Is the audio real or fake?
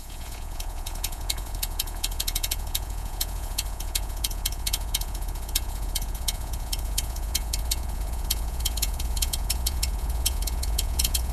fake